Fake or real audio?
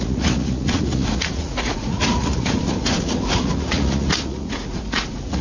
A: fake